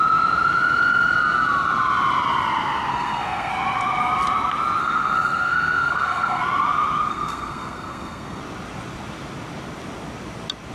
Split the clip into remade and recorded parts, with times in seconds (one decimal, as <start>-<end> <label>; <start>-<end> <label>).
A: 0.0-2.9 recorded; 2.9-3.5 remade; 3.5-4.8 recorded; 4.8-6.4 remade; 6.4-7.1 recorded; 7.1-8.4 remade; 8.4-10.7 recorded